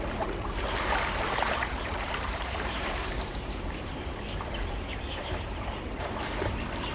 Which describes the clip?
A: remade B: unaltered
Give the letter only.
A